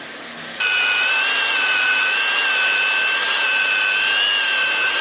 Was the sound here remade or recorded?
recorded